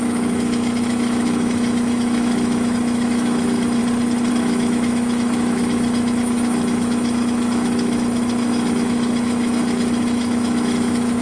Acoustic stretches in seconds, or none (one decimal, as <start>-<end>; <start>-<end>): 3.8-4.3